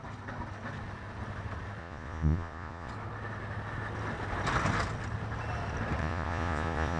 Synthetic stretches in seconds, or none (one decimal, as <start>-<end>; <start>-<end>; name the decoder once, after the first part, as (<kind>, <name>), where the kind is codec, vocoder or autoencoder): 1.8-2.9 (vocoder, Vocos); 6.0-7.0